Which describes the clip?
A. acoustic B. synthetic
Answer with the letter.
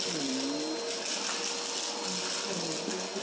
A